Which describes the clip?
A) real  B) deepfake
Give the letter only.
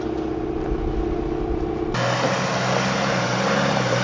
A